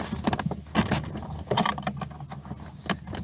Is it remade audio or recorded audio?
recorded